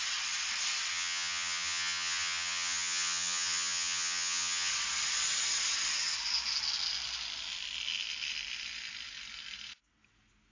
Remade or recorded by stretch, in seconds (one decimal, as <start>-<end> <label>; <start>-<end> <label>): 0.0-0.9 recorded; 0.9-4.7 remade; 4.7-10.5 recorded